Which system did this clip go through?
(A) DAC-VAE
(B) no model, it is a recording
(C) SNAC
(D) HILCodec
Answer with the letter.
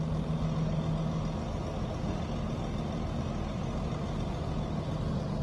B